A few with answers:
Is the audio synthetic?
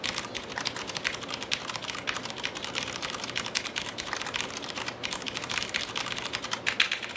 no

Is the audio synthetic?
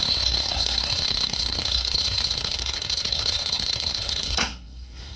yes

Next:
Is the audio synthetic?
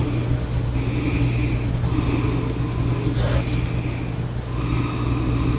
no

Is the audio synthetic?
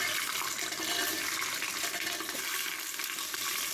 no